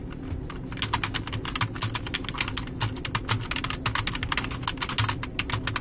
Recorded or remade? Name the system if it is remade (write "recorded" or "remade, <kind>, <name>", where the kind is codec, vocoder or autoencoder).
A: recorded